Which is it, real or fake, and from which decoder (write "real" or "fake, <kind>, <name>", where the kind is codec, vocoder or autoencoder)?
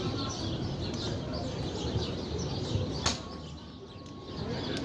real